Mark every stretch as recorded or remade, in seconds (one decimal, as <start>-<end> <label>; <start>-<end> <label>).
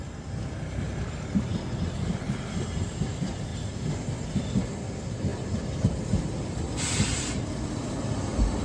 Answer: 0.0-8.6 recorded